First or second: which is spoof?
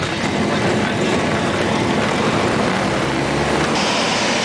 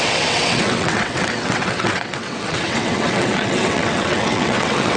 second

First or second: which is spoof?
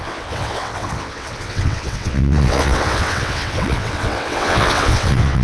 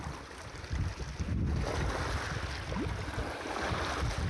first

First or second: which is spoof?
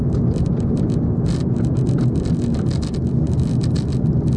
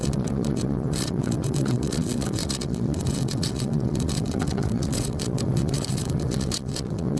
second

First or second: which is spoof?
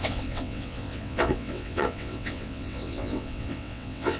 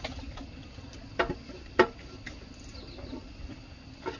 first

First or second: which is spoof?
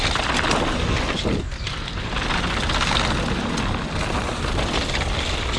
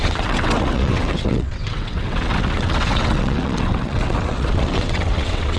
second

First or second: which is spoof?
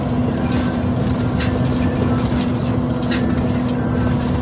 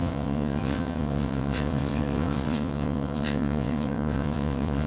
second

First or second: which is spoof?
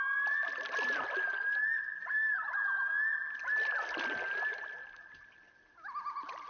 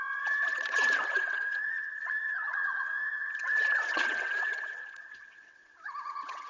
second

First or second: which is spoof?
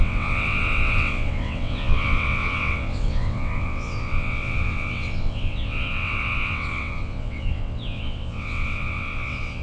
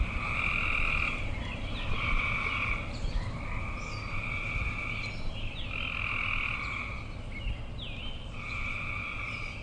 first